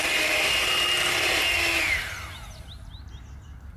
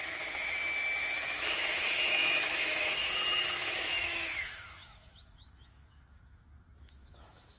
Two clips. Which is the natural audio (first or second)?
first